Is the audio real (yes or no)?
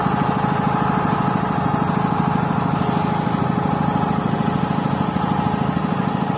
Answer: yes